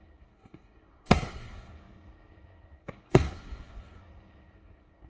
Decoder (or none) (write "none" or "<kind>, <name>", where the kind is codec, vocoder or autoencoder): codec, SNAC